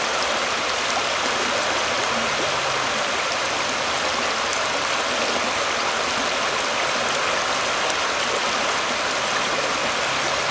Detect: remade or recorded recorded